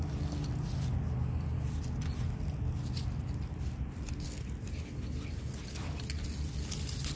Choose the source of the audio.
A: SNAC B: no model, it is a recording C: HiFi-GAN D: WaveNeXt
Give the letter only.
B